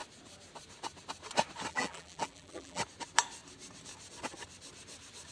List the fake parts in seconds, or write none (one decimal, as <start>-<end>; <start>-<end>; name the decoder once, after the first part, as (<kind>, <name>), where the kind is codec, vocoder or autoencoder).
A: 1.7-2.8 (vocoder, BigVGAN v2)